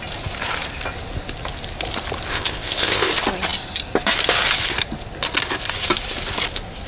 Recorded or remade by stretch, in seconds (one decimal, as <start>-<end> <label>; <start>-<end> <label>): 0.0-2.3 recorded; 2.3-3.1 remade; 3.1-6.9 recorded